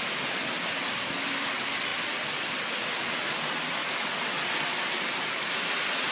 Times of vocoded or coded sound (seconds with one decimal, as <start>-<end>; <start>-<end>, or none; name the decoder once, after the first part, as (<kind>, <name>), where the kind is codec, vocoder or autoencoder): 3.8-4.7 (vocoder, Vocos)

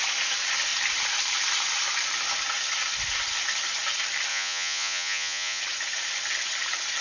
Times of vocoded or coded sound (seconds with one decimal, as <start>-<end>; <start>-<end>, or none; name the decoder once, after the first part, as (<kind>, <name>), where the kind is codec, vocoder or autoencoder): 4.3-5.6 (vocoder, Vocos)

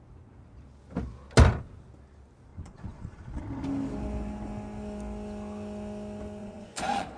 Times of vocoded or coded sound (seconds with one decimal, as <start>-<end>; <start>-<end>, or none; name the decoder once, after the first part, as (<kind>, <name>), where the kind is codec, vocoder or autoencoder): 2.5-3.4 (vocoder, Vocos); 6.4-7.2

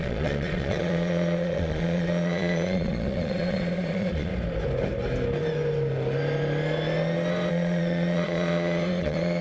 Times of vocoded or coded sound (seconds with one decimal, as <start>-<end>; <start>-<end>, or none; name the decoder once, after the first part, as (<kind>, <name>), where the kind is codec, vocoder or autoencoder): 0.0-4.3 (vocoder, Vocos); 7.5-9.4

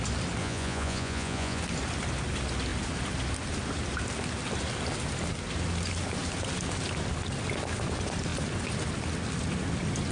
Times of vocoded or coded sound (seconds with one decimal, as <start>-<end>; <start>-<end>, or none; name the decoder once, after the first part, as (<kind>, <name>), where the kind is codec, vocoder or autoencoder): 0.4-1.6 (vocoder, Vocos)